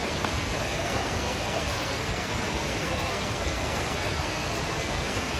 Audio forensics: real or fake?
fake